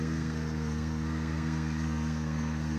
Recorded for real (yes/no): no